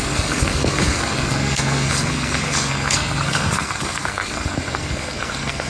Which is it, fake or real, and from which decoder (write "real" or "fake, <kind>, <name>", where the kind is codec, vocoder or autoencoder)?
fake, codec, SNAC